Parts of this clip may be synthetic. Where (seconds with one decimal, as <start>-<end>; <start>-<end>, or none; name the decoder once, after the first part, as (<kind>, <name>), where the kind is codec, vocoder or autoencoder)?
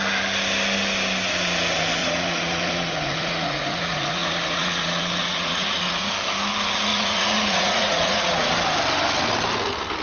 2.0-6.1 (vocoder, Vocos); 6.9-8.5